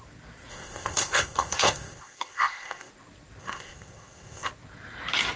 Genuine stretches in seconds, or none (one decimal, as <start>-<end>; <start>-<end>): 0.0-0.5; 2.9-3.4; 4.5-5.4